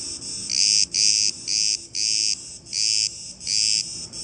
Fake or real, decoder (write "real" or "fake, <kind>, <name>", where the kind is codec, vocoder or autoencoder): real